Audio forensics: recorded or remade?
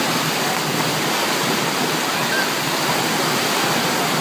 recorded